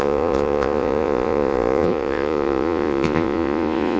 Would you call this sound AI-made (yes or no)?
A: yes